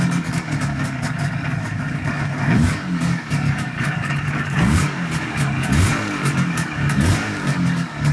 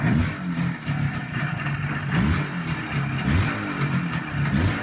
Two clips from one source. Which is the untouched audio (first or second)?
second